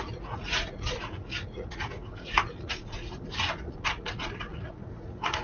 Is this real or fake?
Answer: fake